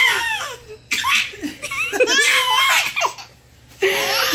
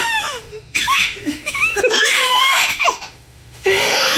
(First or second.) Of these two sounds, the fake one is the second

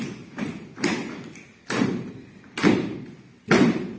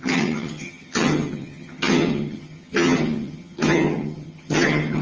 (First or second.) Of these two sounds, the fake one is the second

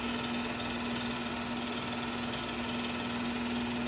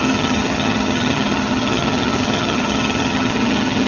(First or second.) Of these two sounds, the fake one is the second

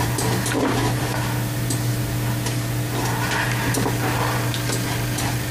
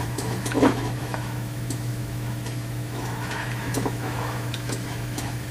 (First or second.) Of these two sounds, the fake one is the second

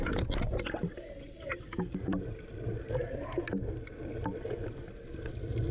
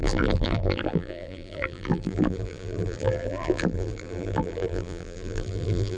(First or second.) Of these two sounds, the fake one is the second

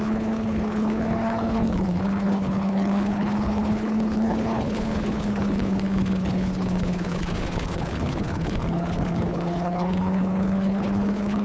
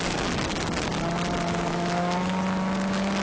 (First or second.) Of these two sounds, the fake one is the first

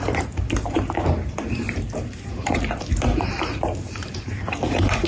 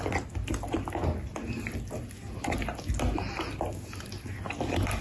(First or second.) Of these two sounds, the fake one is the first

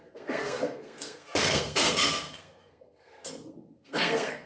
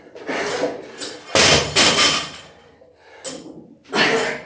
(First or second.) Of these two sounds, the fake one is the first